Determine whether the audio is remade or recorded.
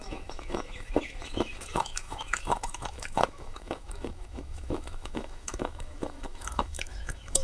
remade